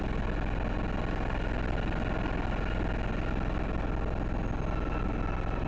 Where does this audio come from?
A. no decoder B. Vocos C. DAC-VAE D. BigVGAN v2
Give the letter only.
A